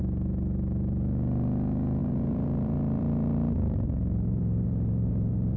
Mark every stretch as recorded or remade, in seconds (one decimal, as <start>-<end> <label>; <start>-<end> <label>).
0.0-2.0 recorded; 2.0-5.6 remade

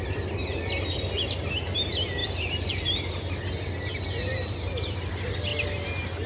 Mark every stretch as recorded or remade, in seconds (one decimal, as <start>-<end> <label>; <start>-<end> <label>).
0.0-2.2 recorded; 2.2-3.4 remade; 3.4-6.3 recorded

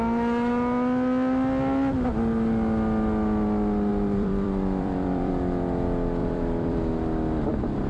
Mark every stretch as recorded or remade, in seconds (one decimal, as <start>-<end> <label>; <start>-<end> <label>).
0.0-3.9 recorded; 3.9-5.3 remade; 5.3-6.2 recorded; 6.2-6.8 remade; 6.8-7.9 recorded

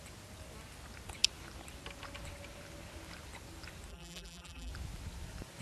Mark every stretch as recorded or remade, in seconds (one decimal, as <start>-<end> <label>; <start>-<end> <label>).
0.0-3.9 recorded; 3.9-4.7 remade; 4.7-5.6 recorded